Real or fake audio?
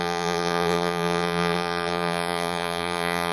fake